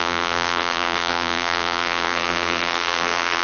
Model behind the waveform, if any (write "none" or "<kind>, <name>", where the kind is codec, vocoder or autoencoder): vocoder, BigVGAN v2